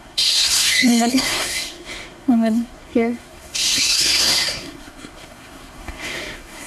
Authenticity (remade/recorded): remade